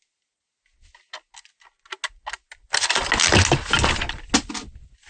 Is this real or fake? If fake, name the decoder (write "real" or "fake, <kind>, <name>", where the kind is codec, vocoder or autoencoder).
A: real